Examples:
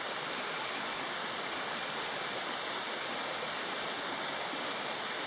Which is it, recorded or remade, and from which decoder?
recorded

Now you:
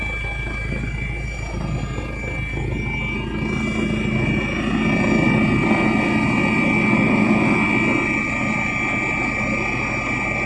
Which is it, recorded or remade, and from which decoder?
recorded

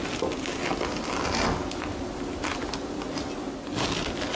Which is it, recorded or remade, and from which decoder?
recorded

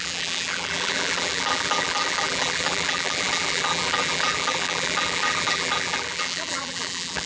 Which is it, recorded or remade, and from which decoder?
remade, vocoder, BigVGAN v2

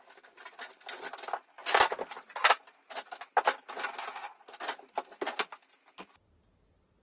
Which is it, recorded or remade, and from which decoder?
recorded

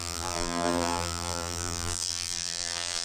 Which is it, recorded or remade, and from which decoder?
remade, vocoder, BigVGAN v2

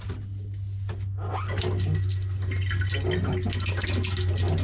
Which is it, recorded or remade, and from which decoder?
recorded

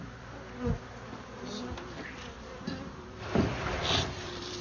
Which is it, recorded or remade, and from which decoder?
remade, vocoder, BigVGAN v2